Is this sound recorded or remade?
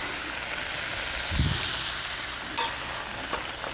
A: recorded